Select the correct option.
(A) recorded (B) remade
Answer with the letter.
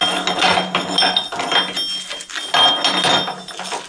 A